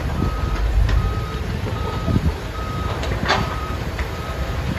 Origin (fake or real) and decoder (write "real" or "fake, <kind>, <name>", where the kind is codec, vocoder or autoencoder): fake, vocoder, BigVGAN v2